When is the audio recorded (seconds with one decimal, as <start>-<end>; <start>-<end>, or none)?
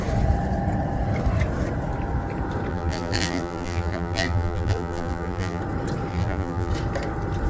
0.0-2.7; 5.6-6.1; 6.7-7.5